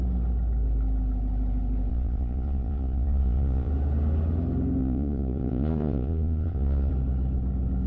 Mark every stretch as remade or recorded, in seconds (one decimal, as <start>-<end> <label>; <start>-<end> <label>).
0.0-1.9 recorded; 1.9-3.7 remade; 3.7-4.8 recorded; 4.8-6.9 remade; 6.9-7.9 recorded